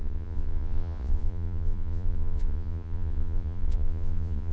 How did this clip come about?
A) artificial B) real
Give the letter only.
A